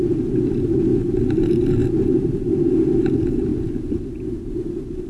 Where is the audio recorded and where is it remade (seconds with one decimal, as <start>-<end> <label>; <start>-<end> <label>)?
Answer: 0.0-5.1 recorded